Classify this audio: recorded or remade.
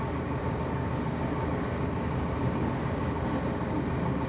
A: remade